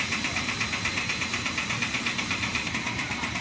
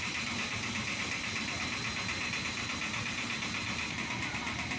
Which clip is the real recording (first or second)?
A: second